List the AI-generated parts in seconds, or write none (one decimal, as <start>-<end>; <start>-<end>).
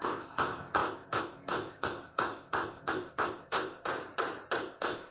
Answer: 0.0-3.9; 4.6-5.1